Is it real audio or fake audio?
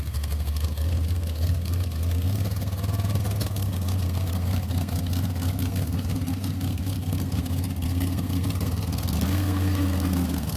fake